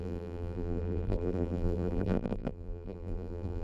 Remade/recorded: remade